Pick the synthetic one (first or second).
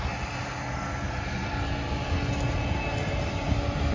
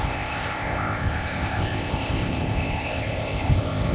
second